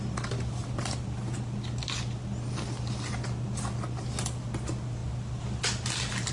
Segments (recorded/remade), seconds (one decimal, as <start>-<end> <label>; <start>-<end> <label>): 0.0-6.3 recorded